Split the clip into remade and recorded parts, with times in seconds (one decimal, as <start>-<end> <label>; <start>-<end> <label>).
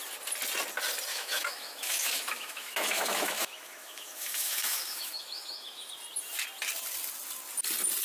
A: 0.0-1.1 recorded; 1.1-5.9 remade; 5.9-8.0 recorded